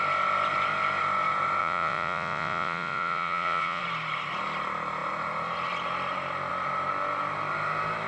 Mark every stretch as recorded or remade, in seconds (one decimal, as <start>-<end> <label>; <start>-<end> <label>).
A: 0.0-1.6 recorded; 1.6-3.8 remade; 3.8-8.1 recorded